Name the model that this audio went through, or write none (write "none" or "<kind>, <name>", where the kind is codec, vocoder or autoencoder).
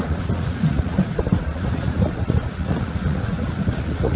vocoder, Vocos